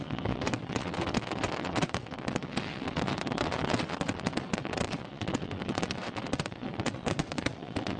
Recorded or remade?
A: remade